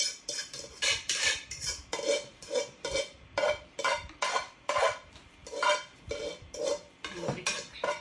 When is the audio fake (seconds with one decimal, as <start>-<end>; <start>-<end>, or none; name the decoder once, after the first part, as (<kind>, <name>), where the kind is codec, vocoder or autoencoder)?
0.0-8.0 (vocoder, BigVGAN v2)